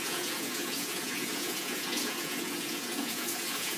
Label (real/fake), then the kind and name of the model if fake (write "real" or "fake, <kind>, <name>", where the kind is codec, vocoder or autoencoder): fake, vocoder, Vocos